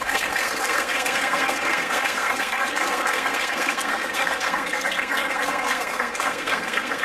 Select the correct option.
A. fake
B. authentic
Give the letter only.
A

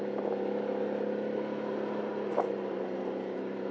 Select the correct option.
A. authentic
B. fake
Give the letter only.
A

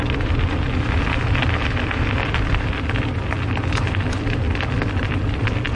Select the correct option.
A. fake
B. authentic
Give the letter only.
B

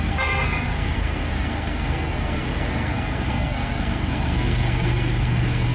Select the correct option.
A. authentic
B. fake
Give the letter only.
B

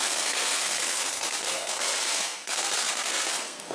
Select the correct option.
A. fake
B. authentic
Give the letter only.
A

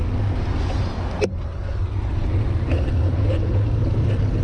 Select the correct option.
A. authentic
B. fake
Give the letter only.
A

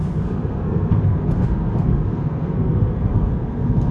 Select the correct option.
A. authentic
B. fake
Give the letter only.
B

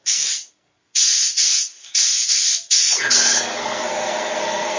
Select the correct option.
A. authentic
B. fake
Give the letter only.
B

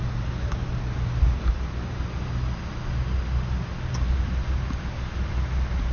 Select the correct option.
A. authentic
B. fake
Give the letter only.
A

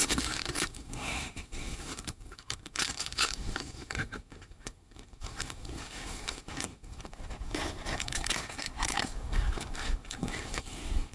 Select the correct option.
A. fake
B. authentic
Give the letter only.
A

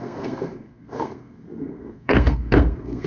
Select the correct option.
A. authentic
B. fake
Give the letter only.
B